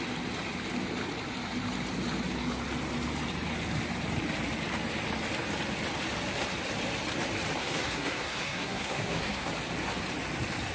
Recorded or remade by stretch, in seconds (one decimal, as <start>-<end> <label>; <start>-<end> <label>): 0.0-7.6 recorded; 7.6-9.5 remade; 9.5-10.7 recorded